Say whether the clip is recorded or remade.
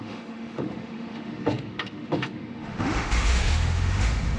remade